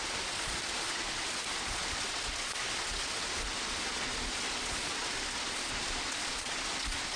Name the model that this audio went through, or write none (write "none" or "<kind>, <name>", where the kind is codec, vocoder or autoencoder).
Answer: vocoder, Vocos